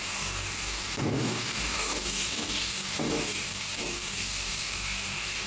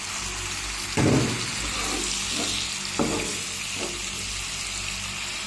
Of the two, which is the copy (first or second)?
first